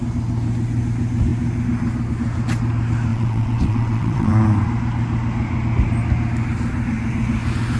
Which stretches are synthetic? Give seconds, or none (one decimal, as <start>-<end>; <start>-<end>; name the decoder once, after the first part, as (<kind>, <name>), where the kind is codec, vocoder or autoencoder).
3.1-4.3 (vocoder, WaveNeXt)